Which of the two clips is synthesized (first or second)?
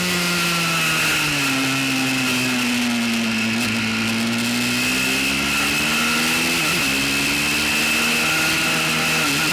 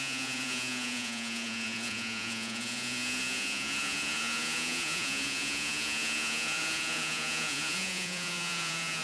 second